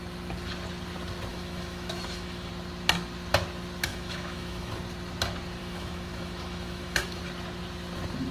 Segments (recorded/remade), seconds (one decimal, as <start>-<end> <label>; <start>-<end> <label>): 0.0-1.3 recorded; 1.3-2.5 remade; 2.5-3.9 recorded; 3.9-4.7 remade; 4.7-5.6 recorded; 5.6-7.2 remade; 7.2-8.3 recorded

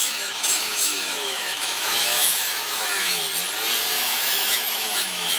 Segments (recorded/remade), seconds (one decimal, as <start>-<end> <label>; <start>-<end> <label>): 0.0-3.2 remade; 3.2-3.9 recorded; 3.9-5.4 remade

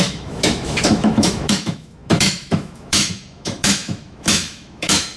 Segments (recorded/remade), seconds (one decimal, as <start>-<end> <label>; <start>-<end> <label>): 0.0-5.2 remade

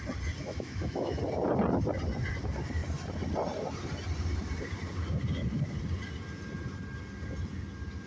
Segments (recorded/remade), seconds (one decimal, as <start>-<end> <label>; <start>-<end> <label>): 0.0-0.4 recorded; 0.4-1.2 remade; 1.2-8.1 recorded

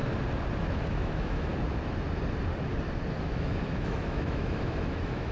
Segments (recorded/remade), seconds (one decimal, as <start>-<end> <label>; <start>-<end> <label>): 0.0-0.6 recorded; 0.6-1.5 remade; 1.5-3.2 recorded; 3.2-5.3 remade

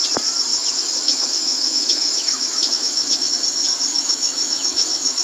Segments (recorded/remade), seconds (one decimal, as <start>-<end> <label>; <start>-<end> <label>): 0.0-0.5 recorded; 0.5-3.3 remade; 3.3-3.9 recorded; 3.9-5.2 remade